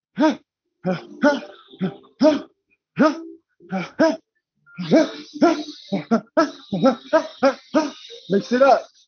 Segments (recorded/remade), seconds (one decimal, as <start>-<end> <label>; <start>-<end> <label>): 0.0-0.8 remade; 0.8-2.5 recorded; 2.5-4.1 remade; 4.1-9.1 recorded